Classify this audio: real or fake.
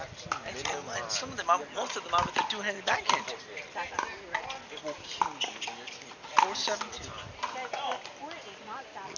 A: real